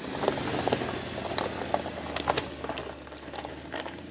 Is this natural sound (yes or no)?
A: yes